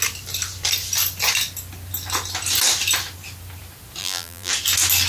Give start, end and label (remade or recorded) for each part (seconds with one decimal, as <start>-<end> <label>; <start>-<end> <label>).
0.0-4.0 recorded; 4.0-4.5 remade; 4.5-5.1 recorded